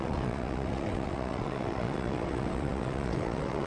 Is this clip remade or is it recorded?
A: remade